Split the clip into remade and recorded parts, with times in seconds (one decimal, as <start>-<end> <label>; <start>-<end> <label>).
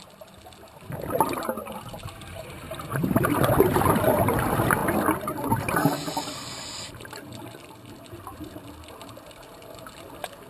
0.0-2.3 recorded; 2.3-3.2 remade; 3.2-10.5 recorded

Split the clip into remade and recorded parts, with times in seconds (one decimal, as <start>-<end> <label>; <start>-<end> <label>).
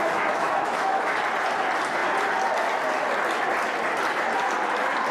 0.0-1.1 remade; 1.1-5.1 recorded